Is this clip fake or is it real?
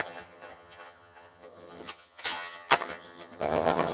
fake